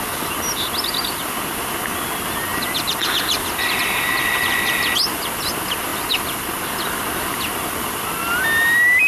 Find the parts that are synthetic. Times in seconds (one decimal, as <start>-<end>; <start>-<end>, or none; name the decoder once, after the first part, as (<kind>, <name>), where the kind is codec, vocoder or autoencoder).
none